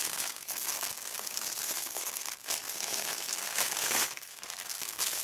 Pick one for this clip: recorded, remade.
remade